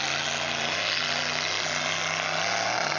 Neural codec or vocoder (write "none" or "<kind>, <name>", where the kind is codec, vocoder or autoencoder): none